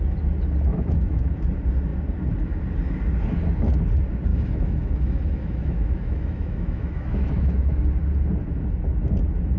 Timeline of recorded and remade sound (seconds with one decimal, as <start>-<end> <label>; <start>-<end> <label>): 0.0-0.7 recorded; 0.7-1.5 remade; 1.5-4.3 recorded; 4.3-7.8 remade; 7.8-9.6 recorded